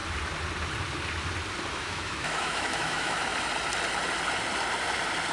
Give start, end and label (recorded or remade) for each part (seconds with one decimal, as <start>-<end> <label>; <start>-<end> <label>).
0.0-1.7 recorded; 1.7-3.3 remade; 3.3-5.3 recorded